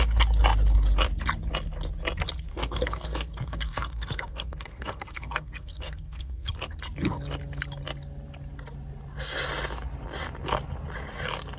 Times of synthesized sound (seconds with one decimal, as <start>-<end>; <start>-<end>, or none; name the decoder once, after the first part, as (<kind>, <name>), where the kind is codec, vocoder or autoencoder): 2.5-6.5 (codec, SNAC)